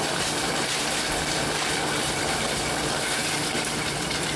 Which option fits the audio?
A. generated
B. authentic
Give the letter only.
A